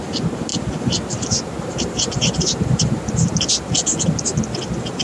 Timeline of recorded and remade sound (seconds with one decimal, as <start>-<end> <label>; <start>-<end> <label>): 0.0-0.5 recorded; 0.5-3.5 remade; 3.5-5.0 recorded